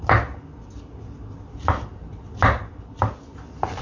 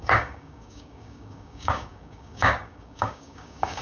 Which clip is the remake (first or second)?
second